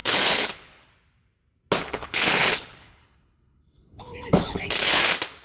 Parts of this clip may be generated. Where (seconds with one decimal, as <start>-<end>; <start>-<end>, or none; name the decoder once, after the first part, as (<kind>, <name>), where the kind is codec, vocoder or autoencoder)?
0.0-0.9 (codec, HILCodec); 1.8-5.0